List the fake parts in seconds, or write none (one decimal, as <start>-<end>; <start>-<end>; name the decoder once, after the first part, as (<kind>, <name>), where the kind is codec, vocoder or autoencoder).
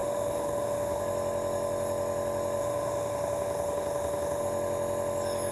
0.0-1.0 (autoencoder, DAC-VAE); 2.6-4.4